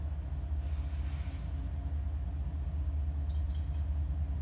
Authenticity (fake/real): real